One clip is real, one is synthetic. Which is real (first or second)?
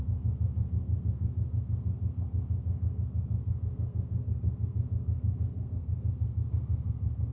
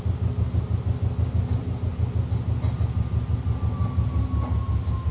second